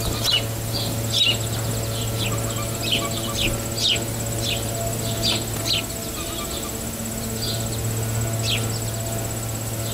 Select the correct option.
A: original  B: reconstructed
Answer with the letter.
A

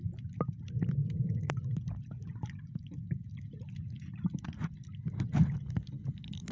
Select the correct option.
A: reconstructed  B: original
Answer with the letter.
A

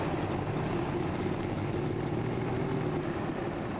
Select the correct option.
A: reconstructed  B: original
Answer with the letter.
B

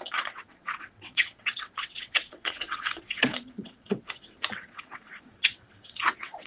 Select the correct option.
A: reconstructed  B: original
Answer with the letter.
A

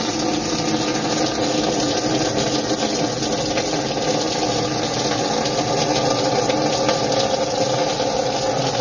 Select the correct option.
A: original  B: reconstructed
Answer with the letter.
A